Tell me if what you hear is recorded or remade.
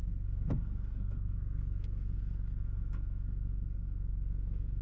remade